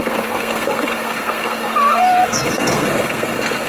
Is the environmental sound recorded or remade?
remade